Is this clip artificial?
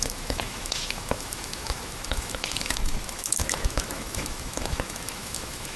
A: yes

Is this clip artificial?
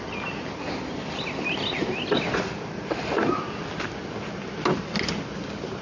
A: no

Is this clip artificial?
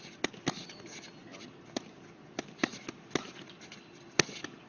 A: no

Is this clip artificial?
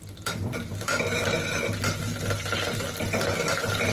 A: no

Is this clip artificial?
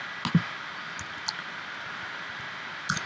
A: no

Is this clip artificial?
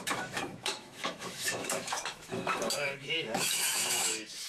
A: yes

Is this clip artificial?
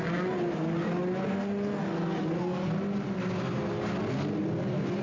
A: no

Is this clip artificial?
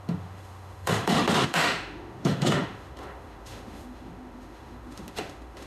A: yes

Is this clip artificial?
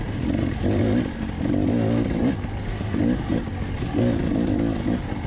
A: no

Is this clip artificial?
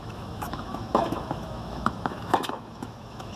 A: yes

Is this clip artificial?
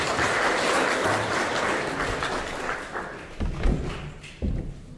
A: no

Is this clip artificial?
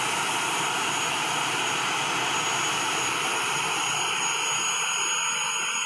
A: no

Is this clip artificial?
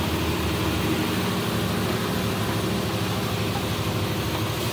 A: no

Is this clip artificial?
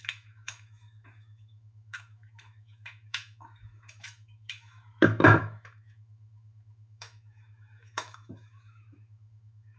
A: yes